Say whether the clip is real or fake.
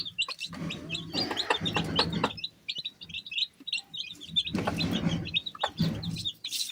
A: real